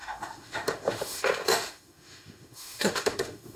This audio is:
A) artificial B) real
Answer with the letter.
A